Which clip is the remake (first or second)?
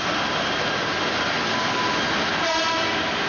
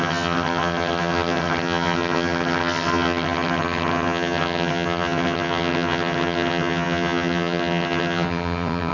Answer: second